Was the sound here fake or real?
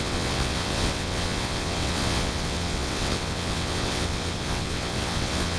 fake